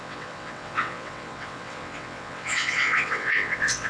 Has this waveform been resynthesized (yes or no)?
yes